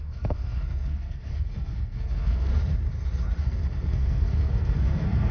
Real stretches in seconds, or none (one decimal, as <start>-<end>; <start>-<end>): 2.5-3.4